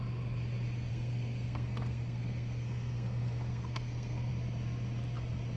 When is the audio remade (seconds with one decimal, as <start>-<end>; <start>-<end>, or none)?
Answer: 0.9-4.3